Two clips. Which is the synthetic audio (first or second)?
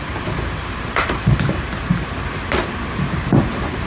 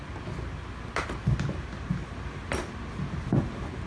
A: first